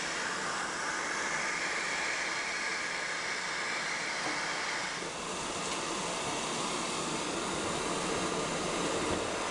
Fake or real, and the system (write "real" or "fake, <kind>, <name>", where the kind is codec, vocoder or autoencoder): fake, vocoder, BigVGAN v2